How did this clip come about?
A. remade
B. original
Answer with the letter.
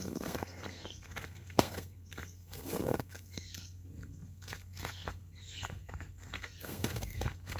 A